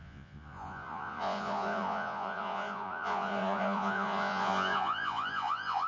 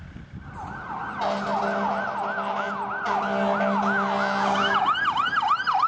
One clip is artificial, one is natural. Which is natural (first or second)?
second